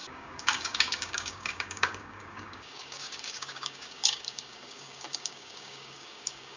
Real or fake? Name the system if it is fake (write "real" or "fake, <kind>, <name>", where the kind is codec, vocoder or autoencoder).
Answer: fake, codec, DAC